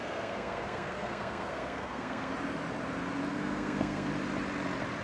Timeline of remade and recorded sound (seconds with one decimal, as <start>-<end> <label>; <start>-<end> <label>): 0.0-2.3 remade; 2.3-3.3 recorded; 3.3-4.1 remade; 4.1-5.0 recorded